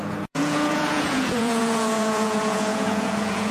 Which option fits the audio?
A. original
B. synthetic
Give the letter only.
B